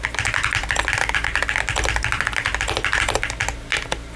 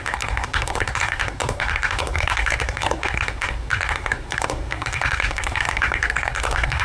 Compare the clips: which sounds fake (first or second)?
second